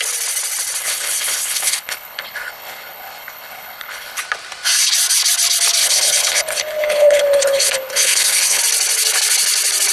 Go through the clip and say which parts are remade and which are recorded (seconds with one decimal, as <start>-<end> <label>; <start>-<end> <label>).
0.0-0.8 recorded; 0.8-4.2 remade; 4.2-5.8 recorded; 5.8-8.6 remade; 8.6-9.9 recorded